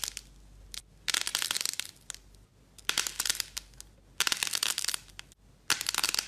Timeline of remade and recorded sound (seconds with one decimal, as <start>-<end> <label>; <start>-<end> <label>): 0.0-6.3 recorded